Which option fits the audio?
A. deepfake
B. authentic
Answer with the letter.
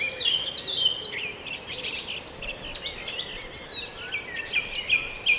B